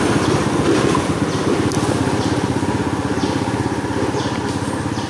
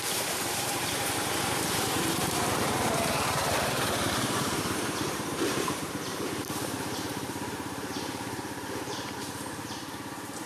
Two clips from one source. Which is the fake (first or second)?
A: second